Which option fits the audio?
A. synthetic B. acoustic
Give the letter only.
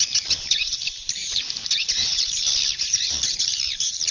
A